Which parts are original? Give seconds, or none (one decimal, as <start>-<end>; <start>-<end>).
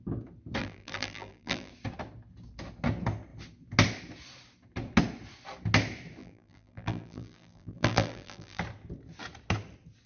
0.0-0.6; 1.7-6.2; 8.6-10.1